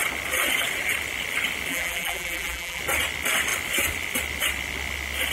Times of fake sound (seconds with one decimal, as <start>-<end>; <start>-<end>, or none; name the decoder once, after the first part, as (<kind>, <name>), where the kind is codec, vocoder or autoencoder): 1.7-2.8 (vocoder, BigVGAN v2)